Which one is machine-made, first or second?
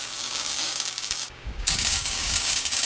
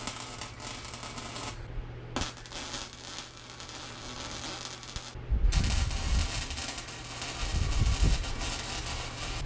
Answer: first